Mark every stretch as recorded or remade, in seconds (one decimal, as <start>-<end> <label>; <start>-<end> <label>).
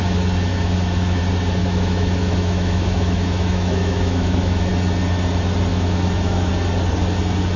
0.0-0.5 recorded; 0.5-1.2 remade; 1.2-1.6 recorded; 1.6-4.7 remade; 4.7-5.7 recorded; 5.7-6.5 remade; 6.5-7.6 recorded